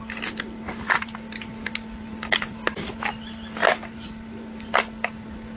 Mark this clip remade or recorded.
recorded